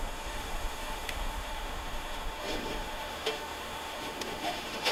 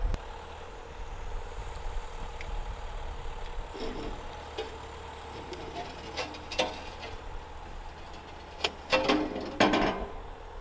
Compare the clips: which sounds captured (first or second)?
second